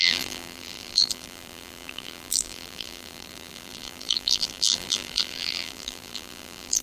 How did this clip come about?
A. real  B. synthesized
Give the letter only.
B